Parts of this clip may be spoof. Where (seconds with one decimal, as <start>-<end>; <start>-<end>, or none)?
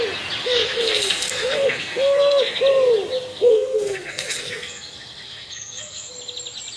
0.4-2.6; 3.3-6.1